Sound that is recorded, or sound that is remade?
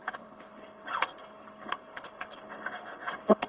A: remade